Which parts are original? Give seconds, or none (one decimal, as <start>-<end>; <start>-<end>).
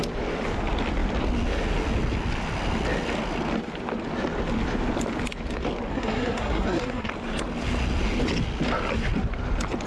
0.0-5.9; 7.1-9.9